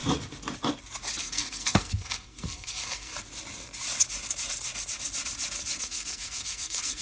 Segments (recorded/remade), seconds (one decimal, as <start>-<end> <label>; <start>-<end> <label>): 0.0-1.2 recorded; 1.2-3.1 remade; 3.1-5.8 recorded; 5.8-7.0 remade